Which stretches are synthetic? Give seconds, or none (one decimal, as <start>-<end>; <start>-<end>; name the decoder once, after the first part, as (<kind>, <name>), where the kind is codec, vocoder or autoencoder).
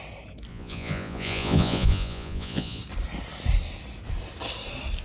0.5-2.8 (vocoder, Vocos)